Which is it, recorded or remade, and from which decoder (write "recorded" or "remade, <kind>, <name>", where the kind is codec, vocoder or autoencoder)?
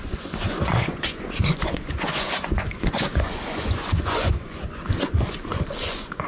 remade, vocoder, Vocos